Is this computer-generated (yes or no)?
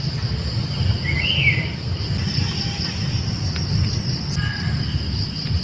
no